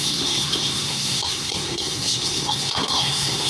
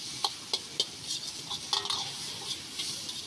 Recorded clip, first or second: second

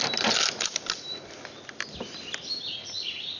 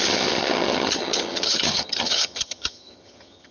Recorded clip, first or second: first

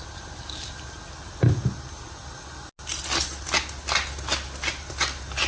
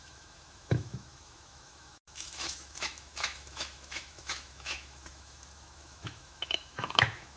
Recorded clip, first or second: first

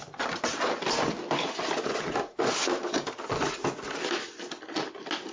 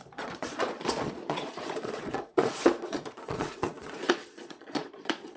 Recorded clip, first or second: first